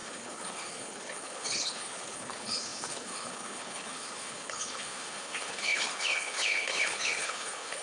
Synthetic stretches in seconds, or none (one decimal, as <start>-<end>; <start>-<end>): 0.0-7.8